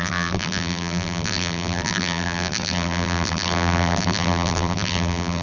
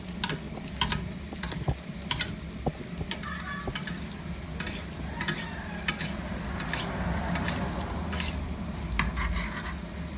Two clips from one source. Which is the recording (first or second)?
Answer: second